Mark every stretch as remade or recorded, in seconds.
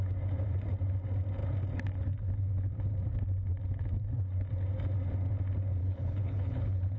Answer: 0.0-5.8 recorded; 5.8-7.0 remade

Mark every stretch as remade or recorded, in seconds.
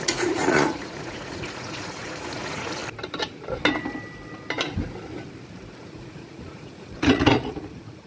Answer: 0.0-2.8 remade; 2.8-5.8 recorded; 5.8-8.1 remade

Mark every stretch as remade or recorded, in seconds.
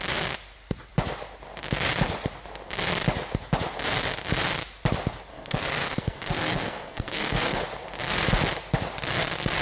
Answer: 0.0-5.3 recorded; 5.3-7.6 remade; 7.6-9.6 recorded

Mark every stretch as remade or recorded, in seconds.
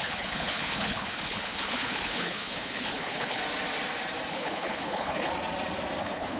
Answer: 0.0-3.4 remade; 3.4-4.3 recorded; 4.3-5.3 remade; 5.3-6.0 recorded; 6.0-6.4 remade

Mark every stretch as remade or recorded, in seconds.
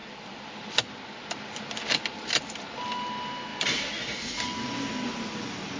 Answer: 0.0-0.7 remade; 0.7-3.5 recorded; 3.5-4.0 remade; 4.0-5.8 recorded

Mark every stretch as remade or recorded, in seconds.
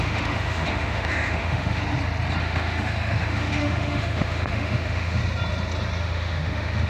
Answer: 0.0-1.8 remade; 1.8-2.4 recorded; 2.4-5.2 remade; 5.2-6.0 recorded; 6.0-6.9 remade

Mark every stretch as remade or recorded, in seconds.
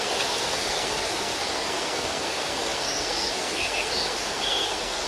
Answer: 0.0-5.1 remade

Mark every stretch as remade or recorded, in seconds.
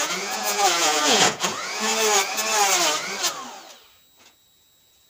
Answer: 0.0-1.9 remade; 1.9-4.2 recorded; 4.2-5.1 remade